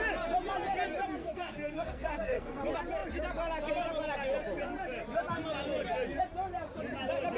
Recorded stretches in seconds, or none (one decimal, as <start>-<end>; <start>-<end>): 0.0-1.2; 2.6-7.4